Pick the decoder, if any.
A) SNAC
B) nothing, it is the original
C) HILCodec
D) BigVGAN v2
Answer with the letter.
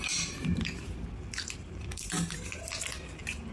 D